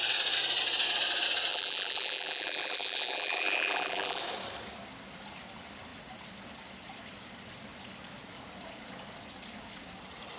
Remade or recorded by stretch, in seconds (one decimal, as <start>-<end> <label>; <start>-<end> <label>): 0.0-1.5 recorded; 1.5-4.2 remade; 4.2-10.4 recorded